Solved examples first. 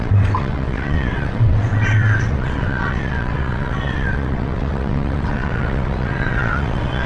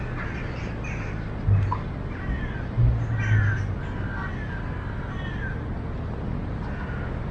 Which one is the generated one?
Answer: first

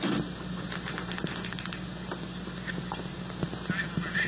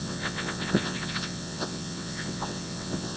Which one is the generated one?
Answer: second